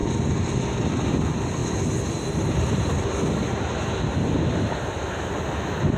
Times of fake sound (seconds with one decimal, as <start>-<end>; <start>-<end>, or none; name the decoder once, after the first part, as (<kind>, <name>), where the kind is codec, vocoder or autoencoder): none